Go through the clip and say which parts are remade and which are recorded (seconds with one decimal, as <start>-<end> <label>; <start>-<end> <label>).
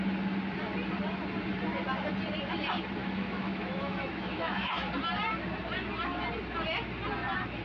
0.0-3.0 recorded; 3.0-4.9 remade; 4.9-7.6 recorded